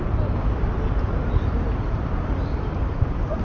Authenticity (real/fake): fake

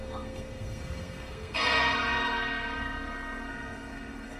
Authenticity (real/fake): fake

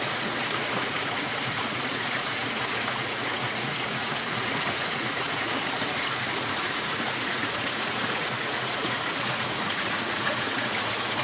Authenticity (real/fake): fake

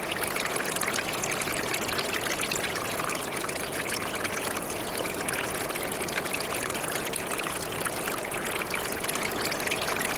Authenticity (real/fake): fake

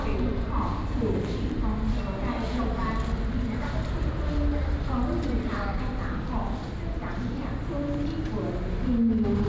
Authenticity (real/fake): real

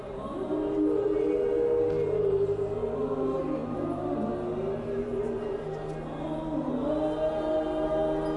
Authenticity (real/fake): real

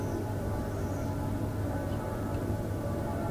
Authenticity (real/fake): fake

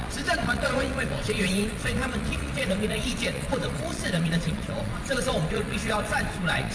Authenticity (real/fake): fake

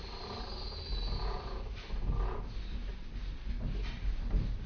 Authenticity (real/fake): real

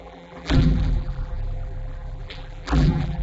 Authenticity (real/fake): fake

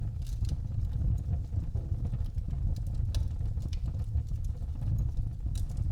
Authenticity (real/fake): real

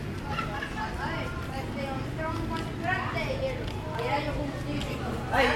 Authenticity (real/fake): real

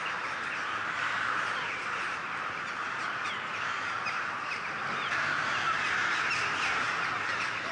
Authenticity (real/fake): fake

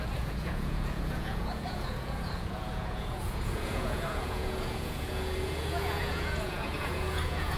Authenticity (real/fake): fake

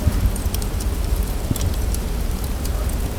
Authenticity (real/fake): fake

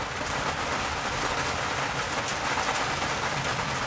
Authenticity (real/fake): real